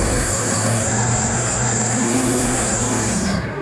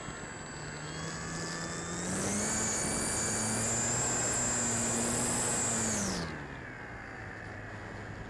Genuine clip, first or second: second